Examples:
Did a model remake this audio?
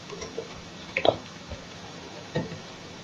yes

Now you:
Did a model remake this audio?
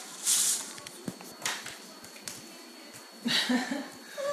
yes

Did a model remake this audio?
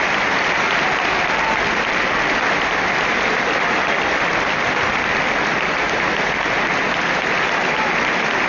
no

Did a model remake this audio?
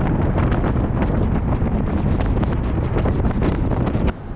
no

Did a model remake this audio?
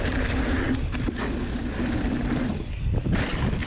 no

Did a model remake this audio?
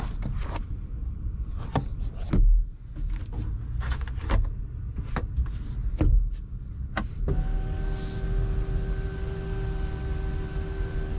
no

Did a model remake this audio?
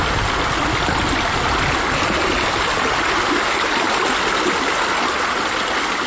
no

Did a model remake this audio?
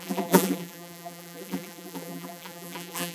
yes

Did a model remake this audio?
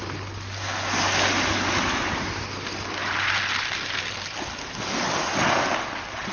no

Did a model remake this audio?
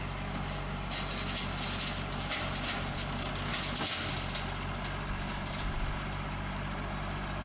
no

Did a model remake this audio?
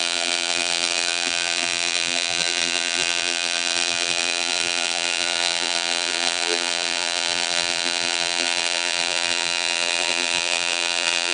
yes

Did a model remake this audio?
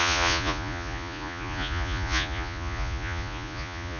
yes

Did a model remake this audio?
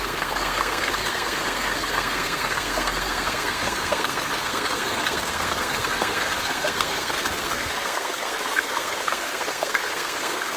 yes